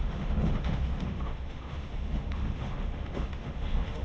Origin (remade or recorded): remade